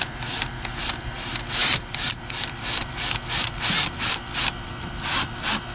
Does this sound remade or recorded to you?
remade